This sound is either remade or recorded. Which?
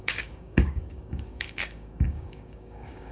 remade